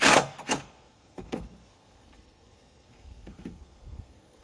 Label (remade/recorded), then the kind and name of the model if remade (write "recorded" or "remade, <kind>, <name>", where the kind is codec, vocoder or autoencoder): remade, codec, SNAC